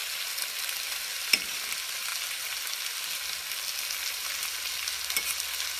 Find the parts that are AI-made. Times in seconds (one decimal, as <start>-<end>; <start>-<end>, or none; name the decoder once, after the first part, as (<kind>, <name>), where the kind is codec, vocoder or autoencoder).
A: 0.0-2.1 (vocoder, BigVGAN v2)